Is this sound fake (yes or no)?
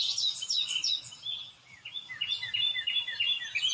no